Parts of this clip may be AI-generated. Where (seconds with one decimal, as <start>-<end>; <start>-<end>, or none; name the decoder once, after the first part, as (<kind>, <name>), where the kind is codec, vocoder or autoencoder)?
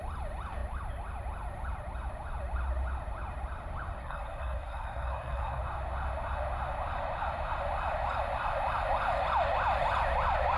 4.0-5.6 (codec, SNAC)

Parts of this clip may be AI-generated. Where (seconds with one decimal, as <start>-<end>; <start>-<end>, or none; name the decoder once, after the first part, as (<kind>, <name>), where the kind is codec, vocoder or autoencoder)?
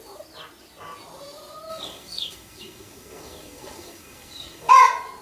1.7-4.7 (codec, SNAC)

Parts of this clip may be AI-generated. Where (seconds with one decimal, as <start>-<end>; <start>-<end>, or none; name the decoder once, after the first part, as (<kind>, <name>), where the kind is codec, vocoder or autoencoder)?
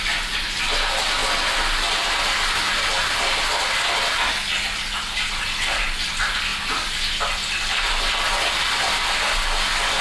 none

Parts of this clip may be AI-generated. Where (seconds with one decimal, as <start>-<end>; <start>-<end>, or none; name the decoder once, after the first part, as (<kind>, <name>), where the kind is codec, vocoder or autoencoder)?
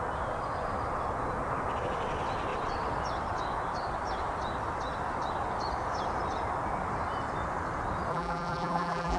8.1-9.2 (vocoder, BigVGAN v2)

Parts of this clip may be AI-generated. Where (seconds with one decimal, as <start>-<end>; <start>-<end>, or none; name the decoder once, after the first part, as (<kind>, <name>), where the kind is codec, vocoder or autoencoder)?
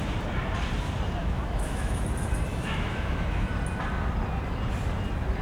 1.2-2.0 (autoencoder, DAC-VAE); 2.5-3.5